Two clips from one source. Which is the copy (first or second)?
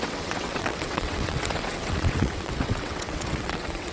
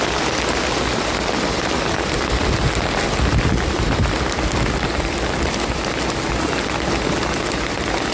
first